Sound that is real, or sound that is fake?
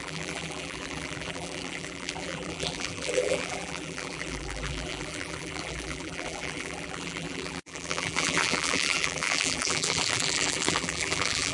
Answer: fake